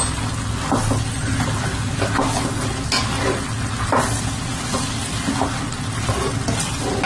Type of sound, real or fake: real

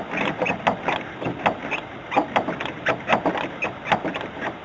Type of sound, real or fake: real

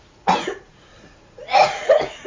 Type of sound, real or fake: fake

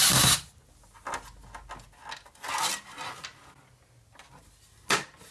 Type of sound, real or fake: real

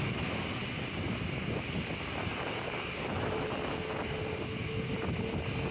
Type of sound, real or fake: real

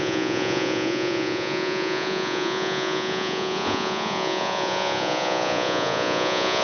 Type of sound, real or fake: fake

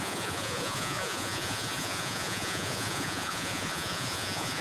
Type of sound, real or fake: fake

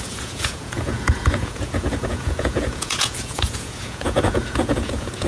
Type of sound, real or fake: fake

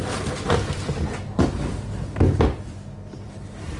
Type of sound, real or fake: real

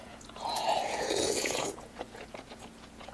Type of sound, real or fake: fake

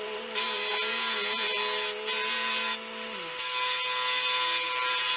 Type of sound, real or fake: real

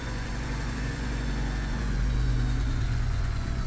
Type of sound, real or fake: fake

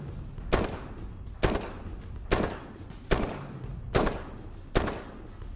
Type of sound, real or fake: real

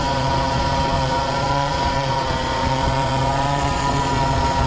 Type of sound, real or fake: fake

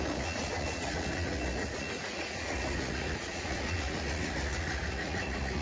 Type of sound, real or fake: fake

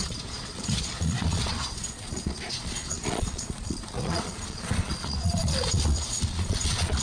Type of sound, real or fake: fake